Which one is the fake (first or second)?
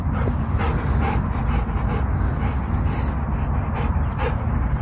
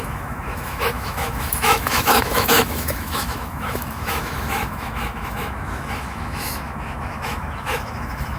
second